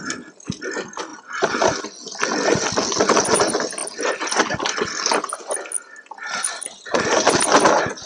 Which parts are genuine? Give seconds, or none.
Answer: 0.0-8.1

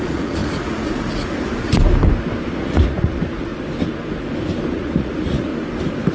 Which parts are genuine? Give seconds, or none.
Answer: 1.7-2.5; 3.5-4.7; 5.5-6.1